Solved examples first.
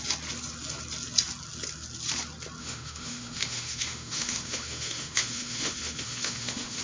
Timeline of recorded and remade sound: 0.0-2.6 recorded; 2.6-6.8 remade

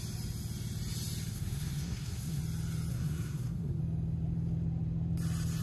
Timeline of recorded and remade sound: 0.0-1.3 recorded; 1.3-2.4 remade; 2.4-2.9 recorded; 2.9-3.8 remade; 3.8-5.6 recorded